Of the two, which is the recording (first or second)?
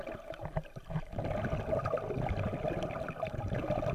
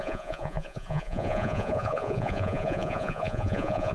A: first